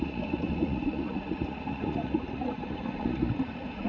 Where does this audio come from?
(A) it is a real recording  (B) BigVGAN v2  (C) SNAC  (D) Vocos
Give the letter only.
D